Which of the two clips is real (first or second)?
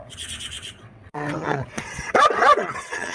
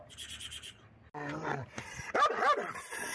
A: second